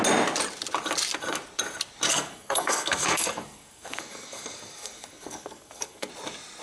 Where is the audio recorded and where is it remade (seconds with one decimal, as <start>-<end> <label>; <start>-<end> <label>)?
0.0-2.1 recorded; 2.1-6.1 remade; 6.1-6.6 recorded